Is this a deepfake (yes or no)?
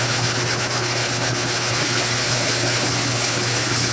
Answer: yes